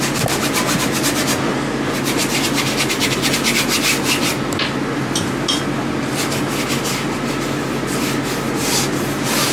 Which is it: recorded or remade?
recorded